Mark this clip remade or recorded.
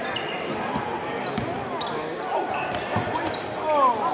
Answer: recorded